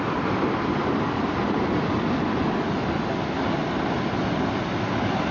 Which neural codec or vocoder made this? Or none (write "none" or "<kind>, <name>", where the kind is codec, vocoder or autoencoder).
none